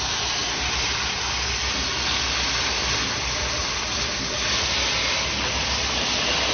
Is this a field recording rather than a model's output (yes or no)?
yes